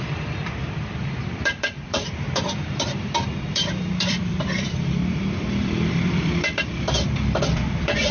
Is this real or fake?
fake